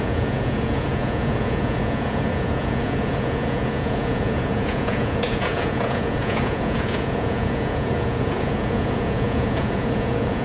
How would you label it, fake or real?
fake